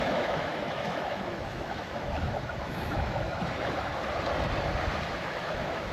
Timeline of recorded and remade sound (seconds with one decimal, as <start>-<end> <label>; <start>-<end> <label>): 0.0-3.9 remade; 3.9-5.1 recorded; 5.1-5.9 remade